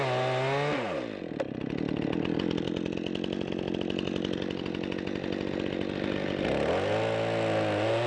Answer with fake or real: real